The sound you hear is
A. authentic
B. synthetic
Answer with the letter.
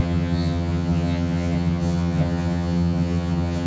B